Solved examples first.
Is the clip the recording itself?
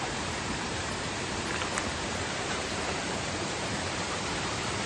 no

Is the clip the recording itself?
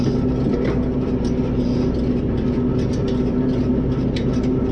yes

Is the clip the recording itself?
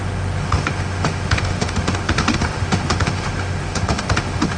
no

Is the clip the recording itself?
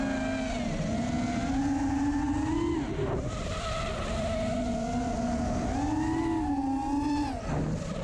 yes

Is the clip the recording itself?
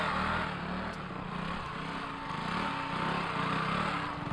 yes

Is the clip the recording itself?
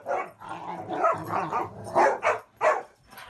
yes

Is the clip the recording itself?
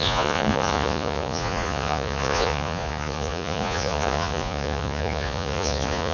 no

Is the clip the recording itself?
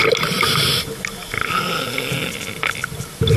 yes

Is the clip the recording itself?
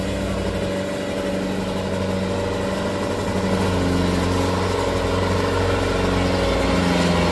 yes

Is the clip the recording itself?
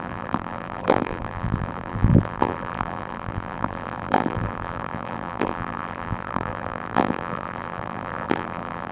no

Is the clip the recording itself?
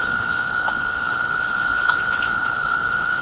no